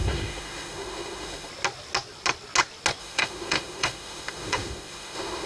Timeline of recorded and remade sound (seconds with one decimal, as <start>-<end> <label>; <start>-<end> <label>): 0.0-1.5 remade; 1.5-3.0 recorded; 3.0-5.5 remade